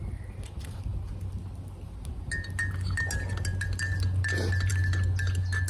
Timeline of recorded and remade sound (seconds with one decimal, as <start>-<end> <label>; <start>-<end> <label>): 0.0-5.7 recorded